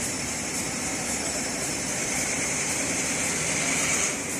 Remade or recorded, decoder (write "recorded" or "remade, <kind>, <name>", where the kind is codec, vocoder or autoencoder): remade, vocoder, BigVGAN v2